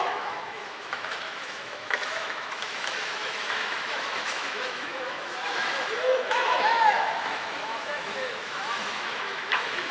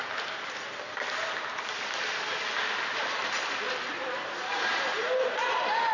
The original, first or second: second